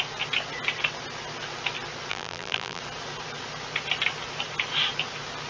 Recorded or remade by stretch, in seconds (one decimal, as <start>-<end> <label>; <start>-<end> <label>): 0.0-2.1 recorded; 2.1-2.8 remade; 2.8-5.5 recorded